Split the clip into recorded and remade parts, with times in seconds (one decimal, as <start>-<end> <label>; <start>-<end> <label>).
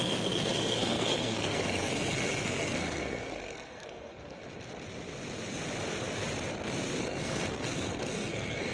0.0-4.4 remade; 4.4-7.0 recorded; 7.0-8.7 remade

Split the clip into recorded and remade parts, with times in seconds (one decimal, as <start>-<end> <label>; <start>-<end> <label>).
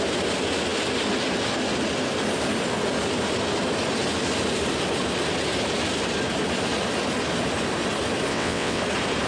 0.0-8.3 recorded; 8.3-8.8 remade; 8.8-9.3 recorded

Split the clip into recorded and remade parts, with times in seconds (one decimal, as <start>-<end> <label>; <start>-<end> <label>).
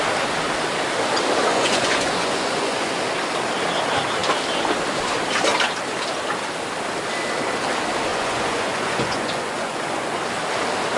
0.0-1.5 recorded; 1.5-3.0 remade; 3.0-8.1 recorded; 8.1-10.2 remade; 10.2-11.0 recorded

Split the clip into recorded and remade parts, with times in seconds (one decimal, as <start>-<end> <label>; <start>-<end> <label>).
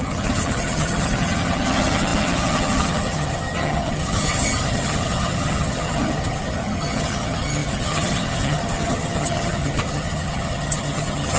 0.0-11.4 remade